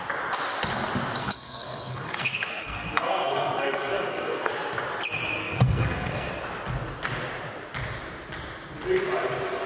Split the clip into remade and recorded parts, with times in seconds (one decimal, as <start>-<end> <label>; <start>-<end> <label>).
0.0-1.2 recorded; 1.2-4.5 remade; 4.5-5.4 recorded; 5.4-6.3 remade; 6.3-9.7 recorded